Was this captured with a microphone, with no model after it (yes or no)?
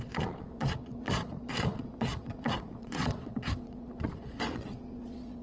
no